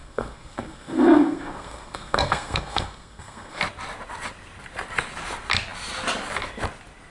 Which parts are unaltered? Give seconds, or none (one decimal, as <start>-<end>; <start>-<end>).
3.6-7.1